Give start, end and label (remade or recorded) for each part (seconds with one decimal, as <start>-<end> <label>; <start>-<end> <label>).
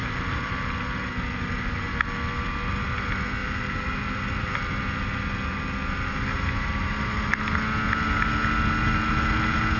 0.0-0.5 remade; 0.5-3.4 recorded; 3.4-4.4 remade; 4.4-9.8 recorded